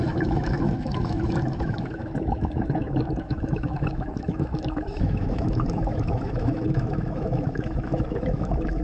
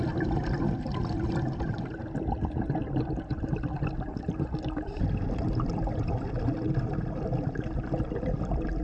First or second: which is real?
second